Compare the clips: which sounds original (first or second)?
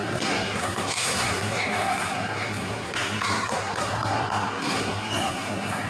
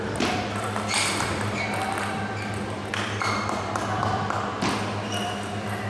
second